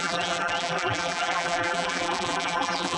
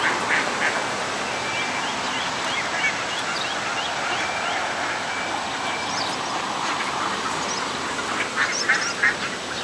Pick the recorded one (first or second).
second